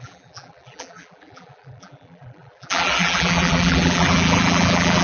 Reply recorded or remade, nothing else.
remade